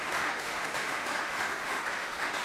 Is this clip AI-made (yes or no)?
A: yes